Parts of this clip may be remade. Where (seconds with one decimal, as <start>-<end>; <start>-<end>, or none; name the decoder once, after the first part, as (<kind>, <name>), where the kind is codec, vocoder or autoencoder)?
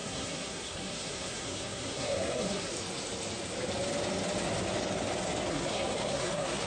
0.0-2.7 (codec, SNAC); 5.5-6.7